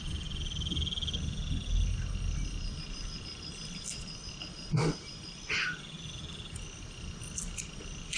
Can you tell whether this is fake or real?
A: real